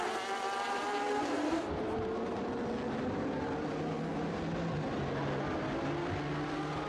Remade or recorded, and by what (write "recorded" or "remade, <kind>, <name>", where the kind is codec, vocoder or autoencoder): recorded